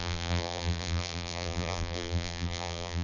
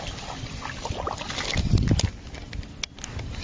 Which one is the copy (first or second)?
first